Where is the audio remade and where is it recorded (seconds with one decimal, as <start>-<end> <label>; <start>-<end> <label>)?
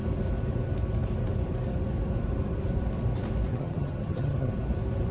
0.0-3.5 recorded; 3.5-4.5 remade; 4.5-5.1 recorded